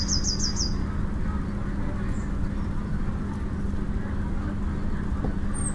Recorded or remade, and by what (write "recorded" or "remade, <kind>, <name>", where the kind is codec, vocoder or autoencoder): recorded